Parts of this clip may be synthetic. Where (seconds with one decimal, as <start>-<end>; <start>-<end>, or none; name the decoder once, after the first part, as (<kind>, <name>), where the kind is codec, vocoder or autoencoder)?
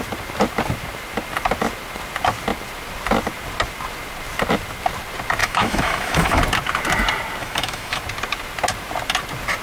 5.4-6.4 (autoencoder, DAC-VAE); 7.4-8.0